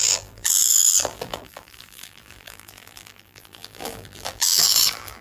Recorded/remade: remade